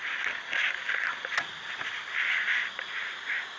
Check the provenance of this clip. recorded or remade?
recorded